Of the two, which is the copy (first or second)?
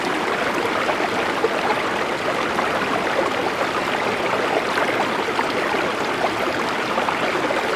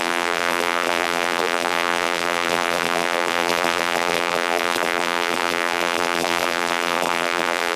second